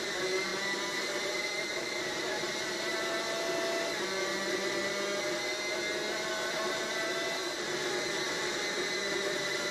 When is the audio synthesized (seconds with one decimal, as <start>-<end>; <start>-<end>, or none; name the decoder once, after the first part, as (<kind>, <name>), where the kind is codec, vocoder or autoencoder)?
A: 0.0-2.9 (vocoder, BigVGAN v2); 6.5-7.4; 8.7-9.7